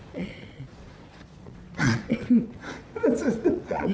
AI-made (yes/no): yes